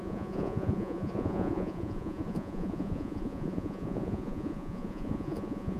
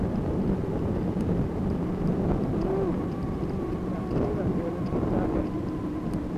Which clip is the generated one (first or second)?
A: first